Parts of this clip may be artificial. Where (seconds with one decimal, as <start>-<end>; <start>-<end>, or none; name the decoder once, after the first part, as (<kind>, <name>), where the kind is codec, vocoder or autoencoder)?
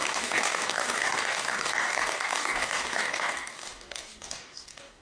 0.0-5.0 (codec, DAC)